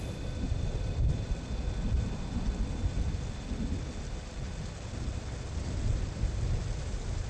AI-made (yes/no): no